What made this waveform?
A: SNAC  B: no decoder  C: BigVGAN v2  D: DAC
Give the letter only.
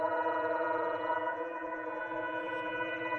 C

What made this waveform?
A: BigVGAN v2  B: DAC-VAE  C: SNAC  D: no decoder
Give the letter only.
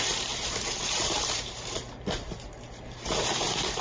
A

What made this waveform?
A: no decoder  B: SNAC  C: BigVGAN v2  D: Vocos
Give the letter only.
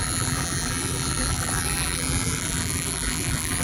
C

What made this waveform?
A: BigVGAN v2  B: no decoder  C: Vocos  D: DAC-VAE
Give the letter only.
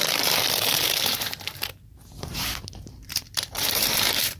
A